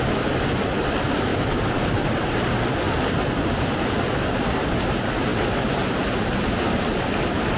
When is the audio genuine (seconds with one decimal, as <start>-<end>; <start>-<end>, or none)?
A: 0.0-1.3; 2.3-7.6